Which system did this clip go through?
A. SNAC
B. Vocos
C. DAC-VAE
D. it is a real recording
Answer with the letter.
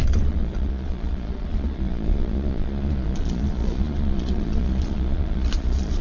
B